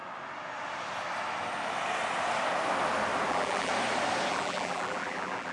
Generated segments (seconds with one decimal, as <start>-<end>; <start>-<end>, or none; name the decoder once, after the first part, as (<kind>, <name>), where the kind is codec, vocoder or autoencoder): 3.3-3.7 (vocoder, BigVGAN v2); 4.3-5.5